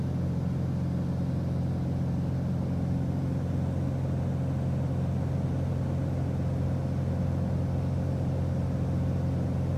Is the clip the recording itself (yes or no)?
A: yes